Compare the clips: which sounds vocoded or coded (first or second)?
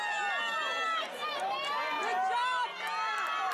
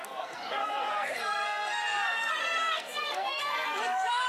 second